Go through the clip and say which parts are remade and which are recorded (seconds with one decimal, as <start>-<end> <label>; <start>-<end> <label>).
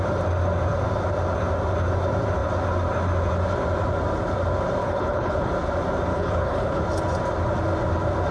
0.0-4.8 recorded; 4.8-5.5 remade; 5.5-6.1 recorded; 6.1-6.8 remade; 6.8-8.3 recorded